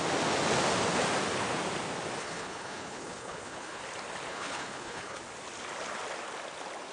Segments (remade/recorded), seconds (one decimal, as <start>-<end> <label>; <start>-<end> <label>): 0.0-2.2 recorded; 2.2-3.8 remade; 3.8-4.3 recorded; 4.3-5.2 remade; 5.2-6.9 recorded